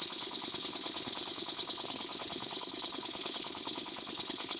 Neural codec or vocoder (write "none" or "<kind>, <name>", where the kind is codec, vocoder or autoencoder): codec, HILCodec